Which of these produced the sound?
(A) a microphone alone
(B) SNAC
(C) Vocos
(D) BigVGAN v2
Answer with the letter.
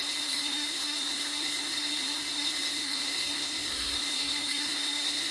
B